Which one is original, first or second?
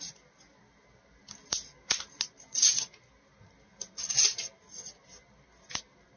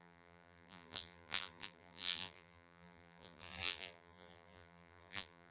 first